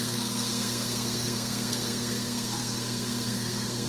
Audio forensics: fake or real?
fake